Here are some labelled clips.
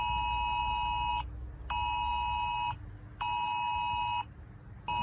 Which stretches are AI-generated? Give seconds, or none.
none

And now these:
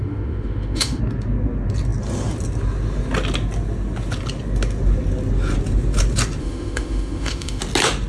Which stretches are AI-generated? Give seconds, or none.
0.0-1.0 (autoencoder, DAC-VAE); 6.4-7.6

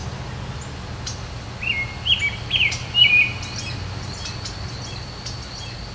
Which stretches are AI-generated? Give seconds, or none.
none

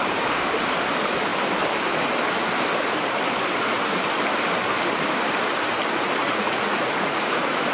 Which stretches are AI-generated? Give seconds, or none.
6.2-7.7 (vocoder, Vocos)

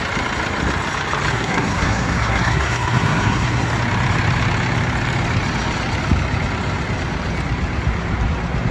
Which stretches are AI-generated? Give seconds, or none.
1.3-3.7 (codec, SNAC)

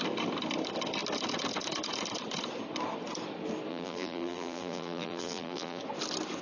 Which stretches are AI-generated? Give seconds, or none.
3.7-5.8 (vocoder, BigVGAN v2)

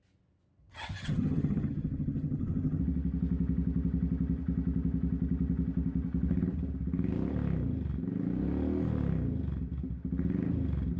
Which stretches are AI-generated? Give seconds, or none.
0.6-2.8 (vocoder, HiFi-GAN)